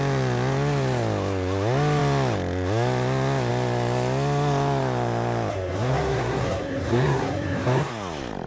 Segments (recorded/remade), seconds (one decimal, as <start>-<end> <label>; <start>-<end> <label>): 0.0-5.5 recorded; 5.5-7.9 remade; 7.9-8.5 recorded

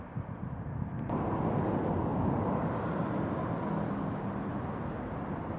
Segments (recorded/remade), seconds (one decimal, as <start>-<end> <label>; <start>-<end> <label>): 0.0-5.6 recorded

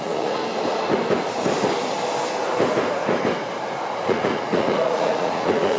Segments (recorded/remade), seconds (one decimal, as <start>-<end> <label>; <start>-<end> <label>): 0.0-0.4 remade; 0.4-3.9 recorded; 3.9-5.8 remade

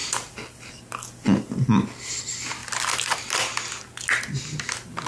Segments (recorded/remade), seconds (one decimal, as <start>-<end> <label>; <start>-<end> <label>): 0.0-0.7 remade; 0.7-2.6 recorded; 2.6-3.4 remade; 3.4-5.1 recorded

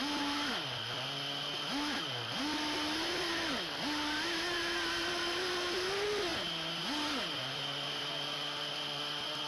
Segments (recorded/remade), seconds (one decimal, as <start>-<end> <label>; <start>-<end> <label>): 0.0-9.5 recorded

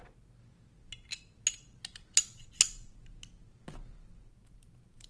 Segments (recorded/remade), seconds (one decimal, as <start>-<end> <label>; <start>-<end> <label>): 0.0-5.1 recorded

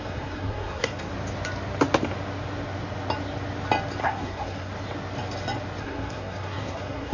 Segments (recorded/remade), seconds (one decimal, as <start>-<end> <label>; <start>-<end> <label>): 0.0-1.1 remade; 1.1-4.0 recorded; 4.0-4.7 remade; 4.7-5.8 recorded; 5.8-7.1 remade